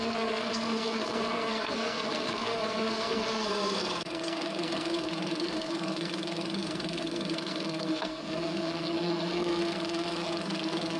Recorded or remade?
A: remade